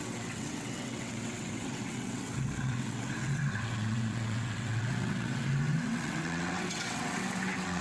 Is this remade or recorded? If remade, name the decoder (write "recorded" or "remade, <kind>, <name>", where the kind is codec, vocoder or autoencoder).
remade, vocoder, WaveNeXt